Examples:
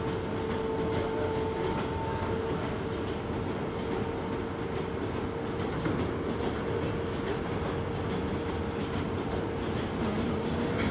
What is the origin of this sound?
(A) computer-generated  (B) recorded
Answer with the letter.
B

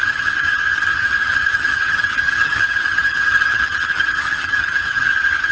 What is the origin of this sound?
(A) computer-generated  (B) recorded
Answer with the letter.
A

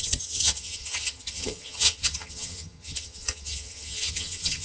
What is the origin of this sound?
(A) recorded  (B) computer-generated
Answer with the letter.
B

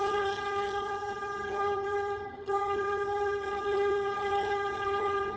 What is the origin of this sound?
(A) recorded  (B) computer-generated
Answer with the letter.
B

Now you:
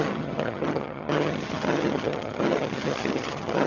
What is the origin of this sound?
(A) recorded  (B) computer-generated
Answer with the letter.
B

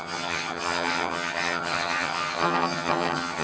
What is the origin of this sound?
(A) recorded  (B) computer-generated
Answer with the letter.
B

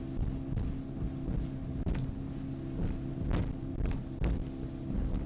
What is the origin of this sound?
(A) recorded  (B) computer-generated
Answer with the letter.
A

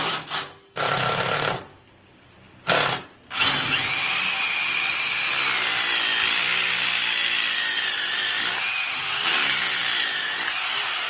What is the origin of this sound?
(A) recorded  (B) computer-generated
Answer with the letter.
A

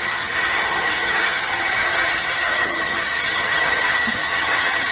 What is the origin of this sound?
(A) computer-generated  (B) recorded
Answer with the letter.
A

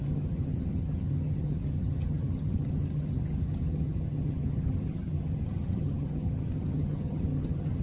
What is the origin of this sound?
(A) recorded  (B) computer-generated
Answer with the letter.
B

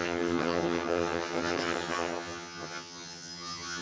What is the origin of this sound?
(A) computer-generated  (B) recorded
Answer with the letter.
A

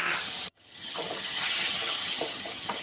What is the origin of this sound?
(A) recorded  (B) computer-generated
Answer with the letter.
B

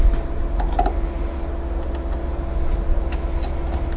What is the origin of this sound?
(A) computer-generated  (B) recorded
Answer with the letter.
B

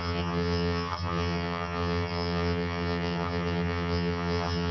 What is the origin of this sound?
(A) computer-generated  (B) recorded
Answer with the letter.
A